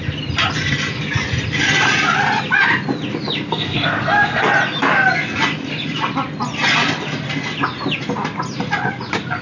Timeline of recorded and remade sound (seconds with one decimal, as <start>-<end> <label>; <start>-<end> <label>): 0.0-3.5 recorded; 3.5-4.4 remade; 4.4-9.4 recorded